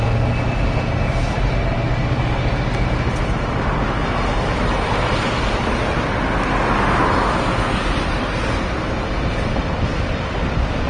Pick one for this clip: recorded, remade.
recorded